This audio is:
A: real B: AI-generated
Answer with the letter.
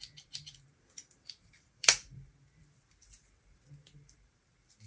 B